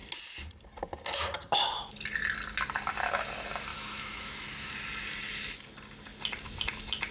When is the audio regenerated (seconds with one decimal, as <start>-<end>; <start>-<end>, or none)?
3.7-4.7